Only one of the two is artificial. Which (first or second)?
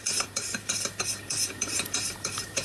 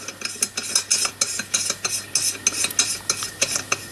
first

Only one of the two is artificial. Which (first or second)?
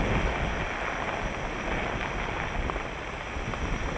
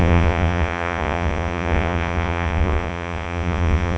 second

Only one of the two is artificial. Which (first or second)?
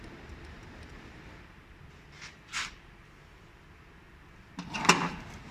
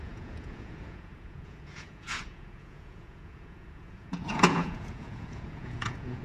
second